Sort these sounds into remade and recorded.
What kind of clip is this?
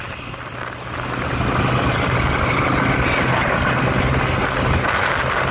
recorded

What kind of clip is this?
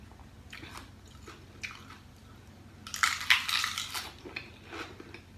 recorded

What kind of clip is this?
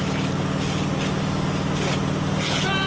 recorded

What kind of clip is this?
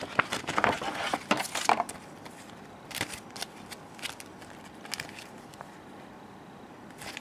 recorded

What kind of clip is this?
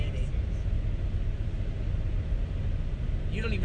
recorded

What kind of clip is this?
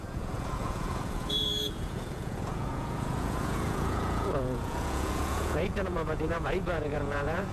remade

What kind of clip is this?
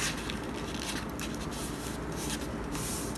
recorded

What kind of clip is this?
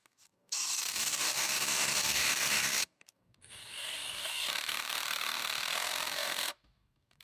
remade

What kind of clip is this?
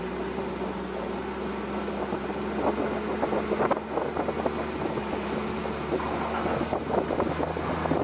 recorded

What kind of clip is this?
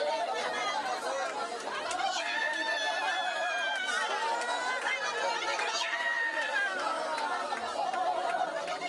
recorded